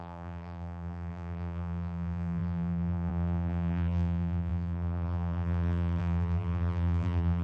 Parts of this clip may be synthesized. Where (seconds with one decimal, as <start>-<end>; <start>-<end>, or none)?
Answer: 0.0-7.4